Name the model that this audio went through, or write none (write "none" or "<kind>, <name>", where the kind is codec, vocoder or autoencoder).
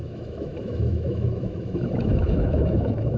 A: autoencoder, DAC-VAE